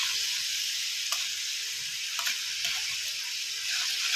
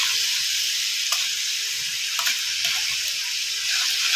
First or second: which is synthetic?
second